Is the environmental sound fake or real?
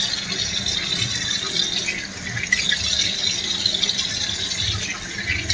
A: real